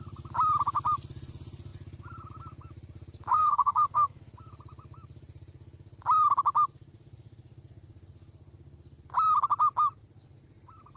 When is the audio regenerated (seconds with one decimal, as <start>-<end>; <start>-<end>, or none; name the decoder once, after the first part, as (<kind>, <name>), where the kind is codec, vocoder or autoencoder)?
3.3-4.2 (codec, SNAC)